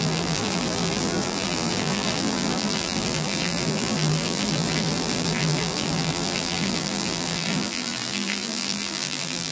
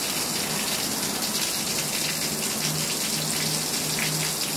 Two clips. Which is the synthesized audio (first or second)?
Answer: first